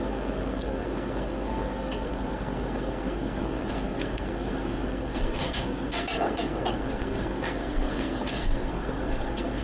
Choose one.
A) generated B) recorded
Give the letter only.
A